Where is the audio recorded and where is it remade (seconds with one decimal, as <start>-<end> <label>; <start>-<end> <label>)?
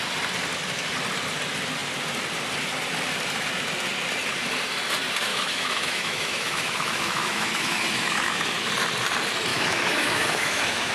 0.0-5.3 recorded; 5.3-8.7 remade; 8.7-9.5 recorded; 9.5-10.9 remade